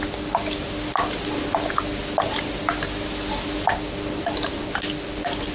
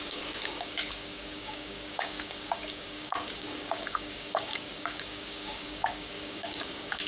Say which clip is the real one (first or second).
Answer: first